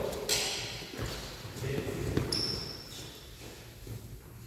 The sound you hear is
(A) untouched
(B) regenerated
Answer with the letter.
A